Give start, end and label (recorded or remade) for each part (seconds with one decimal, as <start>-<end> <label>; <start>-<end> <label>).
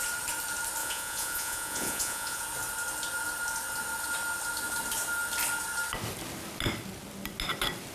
0.0-0.8 recorded; 0.8-2.4 remade; 2.4-7.9 recorded